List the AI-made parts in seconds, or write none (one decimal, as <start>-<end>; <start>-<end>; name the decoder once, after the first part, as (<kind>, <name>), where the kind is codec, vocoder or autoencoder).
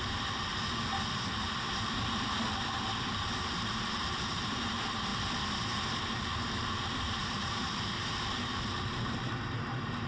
0.0-0.5 (vocoder, BigVGAN v2); 2.5-5.1; 6.1-10.1